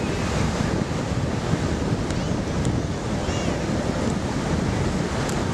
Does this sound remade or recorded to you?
recorded